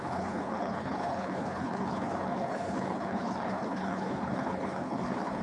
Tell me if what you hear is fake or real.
fake